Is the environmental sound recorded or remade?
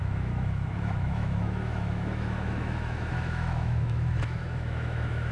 remade